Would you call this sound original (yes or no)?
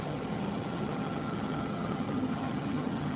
no